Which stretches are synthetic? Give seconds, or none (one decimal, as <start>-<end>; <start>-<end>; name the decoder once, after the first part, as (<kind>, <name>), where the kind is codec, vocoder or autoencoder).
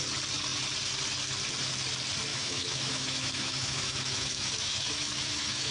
2.3-5.7 (autoencoder, DAC-VAE)